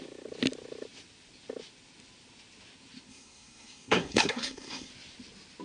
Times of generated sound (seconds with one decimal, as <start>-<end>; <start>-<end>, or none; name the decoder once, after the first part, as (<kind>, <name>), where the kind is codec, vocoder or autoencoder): 3.1-4.9 (codec, SNAC)